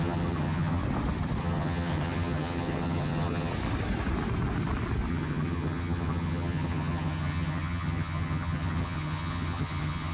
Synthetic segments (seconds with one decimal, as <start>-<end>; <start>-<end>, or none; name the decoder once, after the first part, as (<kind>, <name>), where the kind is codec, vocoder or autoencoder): 0.0-0.8 (vocoder, HiFi-GAN); 1.4-3.5; 5.1-10.1